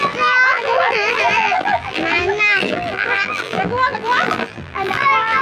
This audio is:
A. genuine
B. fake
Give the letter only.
B